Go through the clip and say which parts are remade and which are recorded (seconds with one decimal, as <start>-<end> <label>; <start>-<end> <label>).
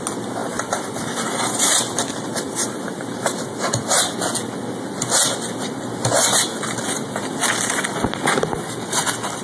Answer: 0.0-0.4 recorded; 0.4-3.9 remade; 3.9-9.4 recorded